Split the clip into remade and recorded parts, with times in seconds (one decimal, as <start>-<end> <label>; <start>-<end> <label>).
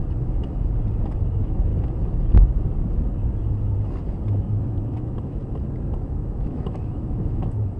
0.0-1.2 recorded; 1.2-1.7 remade; 1.7-4.5 recorded; 4.5-5.4 remade; 5.4-6.0 recorded; 6.0-7.8 remade